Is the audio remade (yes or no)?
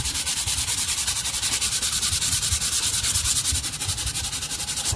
yes